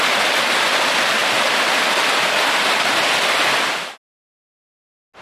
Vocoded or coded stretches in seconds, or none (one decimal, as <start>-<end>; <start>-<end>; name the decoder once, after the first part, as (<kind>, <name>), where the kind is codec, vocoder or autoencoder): none